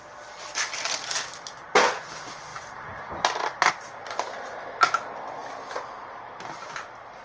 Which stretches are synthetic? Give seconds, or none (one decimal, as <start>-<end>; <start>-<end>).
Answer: none